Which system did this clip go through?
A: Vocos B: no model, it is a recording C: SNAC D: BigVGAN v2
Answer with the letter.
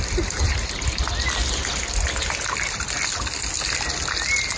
B